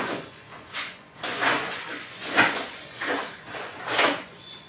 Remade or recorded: remade